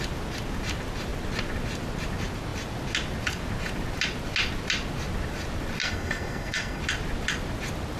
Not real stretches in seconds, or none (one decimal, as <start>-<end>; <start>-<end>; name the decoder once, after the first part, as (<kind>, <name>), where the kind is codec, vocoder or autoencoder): 5.8-6.8 (codec, SNAC)